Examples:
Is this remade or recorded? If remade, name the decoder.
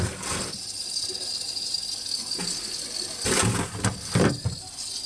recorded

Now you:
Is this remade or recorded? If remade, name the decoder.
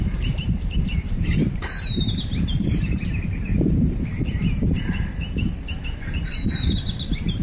remade, vocoder, BigVGAN v2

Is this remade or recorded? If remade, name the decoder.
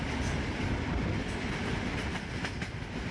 recorded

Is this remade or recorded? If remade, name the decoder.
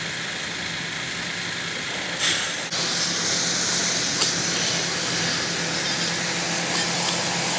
recorded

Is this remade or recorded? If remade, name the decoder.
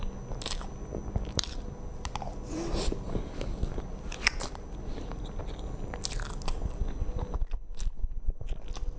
recorded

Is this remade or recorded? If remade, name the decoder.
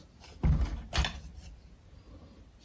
recorded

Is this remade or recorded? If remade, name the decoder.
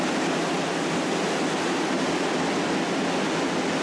recorded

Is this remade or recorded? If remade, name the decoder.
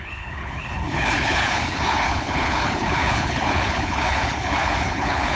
remade, codec, HILCodec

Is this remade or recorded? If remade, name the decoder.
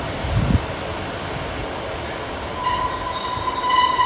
recorded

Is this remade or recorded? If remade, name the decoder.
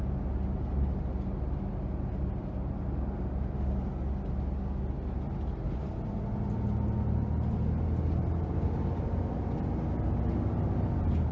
recorded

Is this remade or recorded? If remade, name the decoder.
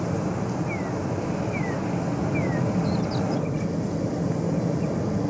recorded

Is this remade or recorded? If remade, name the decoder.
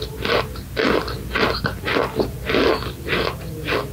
recorded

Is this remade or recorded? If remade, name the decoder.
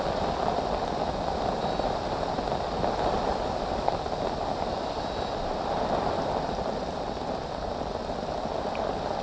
recorded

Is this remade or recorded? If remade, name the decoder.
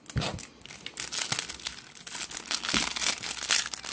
recorded